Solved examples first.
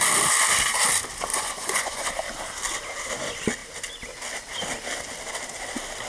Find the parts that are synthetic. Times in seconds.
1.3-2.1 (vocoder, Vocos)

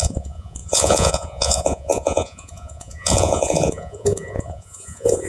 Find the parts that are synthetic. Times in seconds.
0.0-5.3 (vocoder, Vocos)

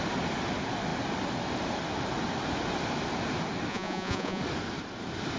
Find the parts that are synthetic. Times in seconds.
3.7-4.4 (vocoder, Vocos)